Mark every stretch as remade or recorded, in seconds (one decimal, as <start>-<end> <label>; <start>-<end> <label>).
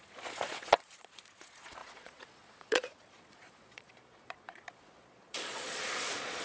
0.0-6.4 remade